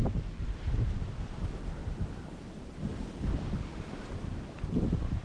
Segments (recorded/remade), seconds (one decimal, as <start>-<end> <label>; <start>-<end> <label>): 0.0-1.0 remade; 1.0-1.8 recorded; 1.8-2.3 remade; 2.3-2.9 recorded; 2.9-5.2 remade